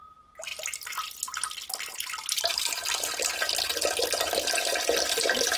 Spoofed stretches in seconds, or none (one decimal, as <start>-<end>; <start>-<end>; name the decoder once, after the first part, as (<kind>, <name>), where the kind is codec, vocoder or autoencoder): none